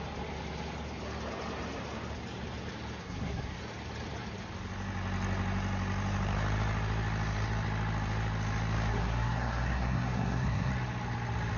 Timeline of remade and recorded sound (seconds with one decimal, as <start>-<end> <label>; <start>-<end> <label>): 0.0-3.0 recorded; 3.0-3.6 remade; 3.6-8.9 recorded; 8.9-10.7 remade; 10.7-11.6 recorded